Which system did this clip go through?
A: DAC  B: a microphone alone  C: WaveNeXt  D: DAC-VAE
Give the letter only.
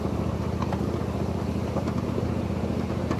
B